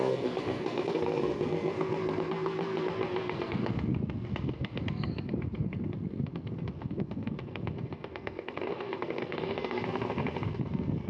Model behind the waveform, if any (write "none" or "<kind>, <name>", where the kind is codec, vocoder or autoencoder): codec, SNAC